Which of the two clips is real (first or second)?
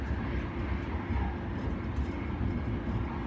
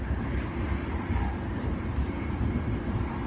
first